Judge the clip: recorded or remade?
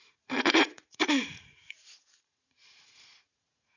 remade